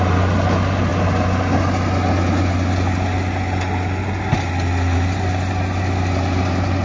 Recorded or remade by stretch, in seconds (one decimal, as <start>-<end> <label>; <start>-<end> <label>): 0.0-6.8 recorded

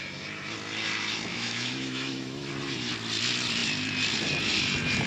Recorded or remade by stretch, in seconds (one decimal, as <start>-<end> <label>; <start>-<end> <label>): 0.0-1.3 recorded; 1.3-2.5 remade; 2.5-5.1 recorded